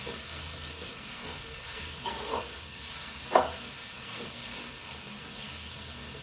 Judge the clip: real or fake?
fake